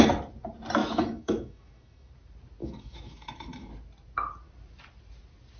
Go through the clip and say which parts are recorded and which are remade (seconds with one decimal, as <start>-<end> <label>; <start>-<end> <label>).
0.0-0.8 recorded; 0.8-2.1 remade; 2.1-2.6 recorded; 2.6-3.7 remade; 3.7-5.6 recorded

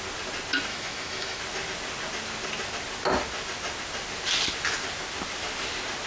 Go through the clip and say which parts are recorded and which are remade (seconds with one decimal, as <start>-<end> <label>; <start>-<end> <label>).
0.0-0.7 recorded; 0.7-1.4 remade; 1.4-6.1 recorded